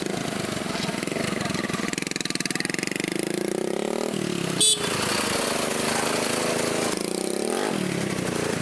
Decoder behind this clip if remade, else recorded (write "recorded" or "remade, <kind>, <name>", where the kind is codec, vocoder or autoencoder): recorded